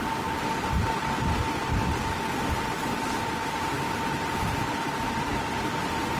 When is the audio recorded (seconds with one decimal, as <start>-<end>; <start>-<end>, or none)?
0.0-1.6; 5.3-6.2